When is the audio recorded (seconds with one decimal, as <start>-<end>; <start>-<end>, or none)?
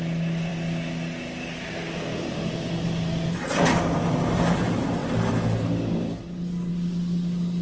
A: 0.0-7.6